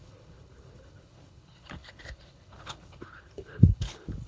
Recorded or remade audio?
remade